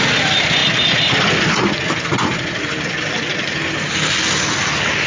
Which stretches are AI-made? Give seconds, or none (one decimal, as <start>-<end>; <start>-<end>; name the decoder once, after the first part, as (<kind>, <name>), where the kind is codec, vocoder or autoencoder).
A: none